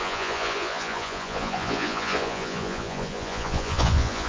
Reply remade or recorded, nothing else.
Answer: remade